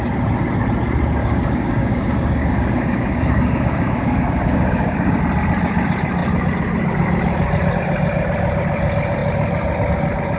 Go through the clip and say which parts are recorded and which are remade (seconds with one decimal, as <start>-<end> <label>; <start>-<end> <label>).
0.0-1.2 recorded; 1.2-5.2 remade; 5.2-10.4 recorded